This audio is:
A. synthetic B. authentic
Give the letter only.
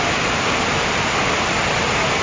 B